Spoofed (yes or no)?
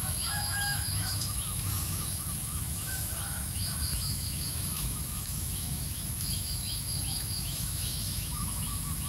yes